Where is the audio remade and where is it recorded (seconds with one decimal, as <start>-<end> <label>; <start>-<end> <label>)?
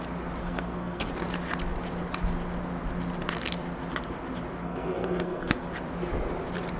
0.0-0.4 recorded; 0.4-1.1 remade; 1.1-4.6 recorded; 4.6-5.7 remade; 5.7-6.8 recorded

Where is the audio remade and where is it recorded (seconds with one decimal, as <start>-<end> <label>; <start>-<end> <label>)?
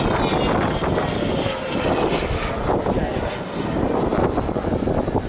0.0-5.3 recorded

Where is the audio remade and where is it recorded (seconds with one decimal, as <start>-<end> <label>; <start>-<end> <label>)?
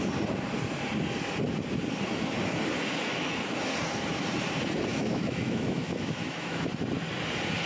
0.0-4.9 recorded; 4.9-6.7 remade; 6.7-7.7 recorded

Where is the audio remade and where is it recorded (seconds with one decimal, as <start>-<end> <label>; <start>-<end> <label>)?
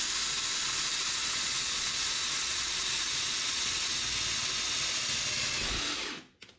0.0-1.1 recorded; 1.1-4.0 remade; 4.0-6.6 recorded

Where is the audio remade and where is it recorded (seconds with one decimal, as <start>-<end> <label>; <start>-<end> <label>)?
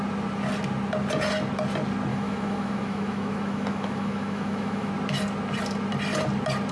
0.0-2.1 recorded; 2.1-4.9 remade; 4.9-6.7 recorded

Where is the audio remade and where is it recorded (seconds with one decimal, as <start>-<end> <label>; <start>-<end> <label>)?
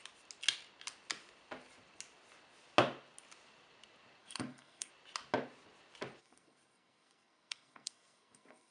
0.0-4.2 recorded; 4.2-4.9 remade; 4.9-6.2 recorded; 6.2-8.7 remade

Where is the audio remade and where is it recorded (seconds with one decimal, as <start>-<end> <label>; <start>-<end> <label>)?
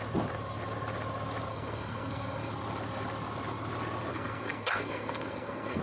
0.0-1.5 recorded; 1.5-2.5 remade; 2.5-4.1 recorded; 4.1-5.8 remade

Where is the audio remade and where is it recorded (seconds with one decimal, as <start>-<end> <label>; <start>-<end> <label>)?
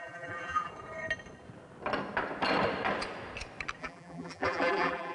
0.0-0.7 remade; 0.7-3.8 recorded; 3.8-5.1 remade